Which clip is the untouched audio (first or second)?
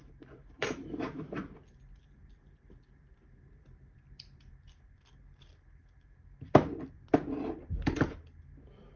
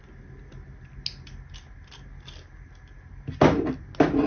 second